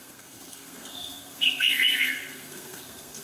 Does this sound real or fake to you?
fake